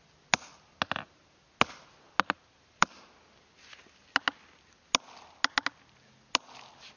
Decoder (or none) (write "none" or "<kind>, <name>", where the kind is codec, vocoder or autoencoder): none